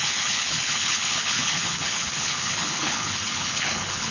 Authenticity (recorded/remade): remade